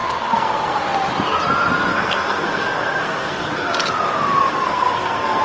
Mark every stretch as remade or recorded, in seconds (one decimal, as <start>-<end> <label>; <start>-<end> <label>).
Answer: 0.0-0.8 remade; 0.8-1.9 recorded; 1.9-3.7 remade; 3.7-4.5 recorded; 4.5-5.4 remade